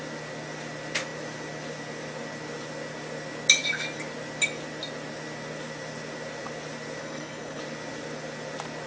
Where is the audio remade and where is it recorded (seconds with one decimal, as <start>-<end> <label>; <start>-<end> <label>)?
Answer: 0.0-7.0 recorded; 7.0-7.6 remade; 7.6-8.9 recorded